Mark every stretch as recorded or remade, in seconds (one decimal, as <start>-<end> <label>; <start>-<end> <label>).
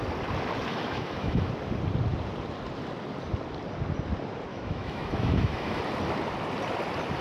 0.0-0.7 recorded; 0.7-1.5 remade; 1.5-4.5 recorded; 4.5-5.8 remade; 5.8-7.2 recorded